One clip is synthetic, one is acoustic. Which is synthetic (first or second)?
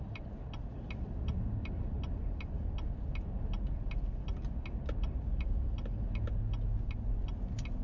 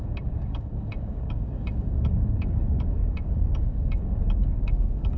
second